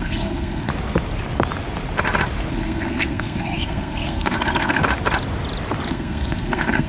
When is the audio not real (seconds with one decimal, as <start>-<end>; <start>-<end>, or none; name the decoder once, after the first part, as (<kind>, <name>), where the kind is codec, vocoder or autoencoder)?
0.0-0.7 (codec, SNAC); 2.5-4.8; 5.9-6.9